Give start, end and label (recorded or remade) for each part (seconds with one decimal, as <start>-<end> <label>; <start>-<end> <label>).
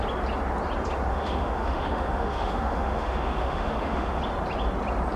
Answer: 0.0-1.1 recorded; 1.1-4.2 remade; 4.2-5.2 recorded